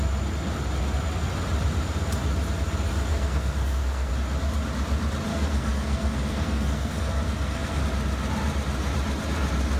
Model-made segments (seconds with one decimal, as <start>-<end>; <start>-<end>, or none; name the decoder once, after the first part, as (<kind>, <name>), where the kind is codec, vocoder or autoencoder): 3.1-4.1 (codec, SNAC); 5.3-7.8